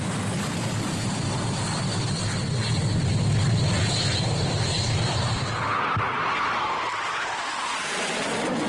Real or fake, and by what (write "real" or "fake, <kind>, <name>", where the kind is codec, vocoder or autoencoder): real